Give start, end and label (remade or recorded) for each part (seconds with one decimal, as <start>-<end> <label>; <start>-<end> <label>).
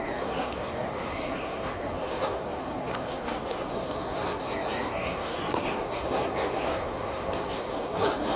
0.0-8.4 remade